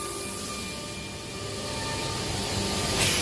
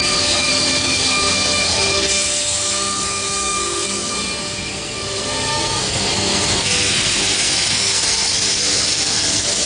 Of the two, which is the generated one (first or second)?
second